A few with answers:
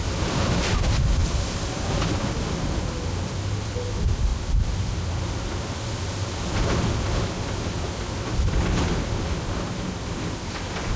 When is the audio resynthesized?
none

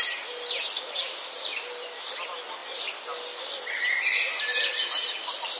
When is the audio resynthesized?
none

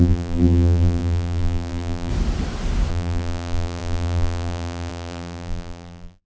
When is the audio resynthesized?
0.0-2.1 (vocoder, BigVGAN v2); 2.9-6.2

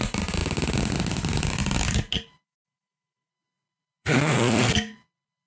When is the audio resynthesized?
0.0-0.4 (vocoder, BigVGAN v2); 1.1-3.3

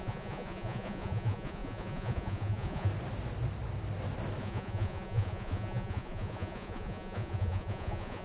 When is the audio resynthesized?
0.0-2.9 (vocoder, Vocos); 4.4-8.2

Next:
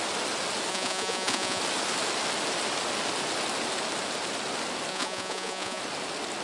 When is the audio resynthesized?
0.7-1.6 (vocoder, Vocos); 4.9-5.8

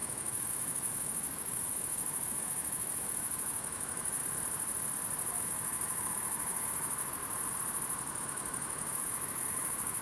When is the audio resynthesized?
0.0-4.2 (autoencoder, DAC-VAE); 5.4-7.2; 8.2-10.0